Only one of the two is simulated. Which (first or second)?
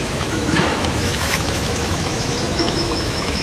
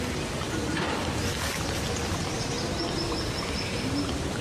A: first